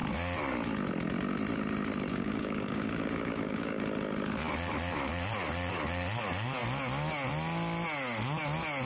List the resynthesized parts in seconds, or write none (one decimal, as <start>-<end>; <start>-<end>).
2.1-3.8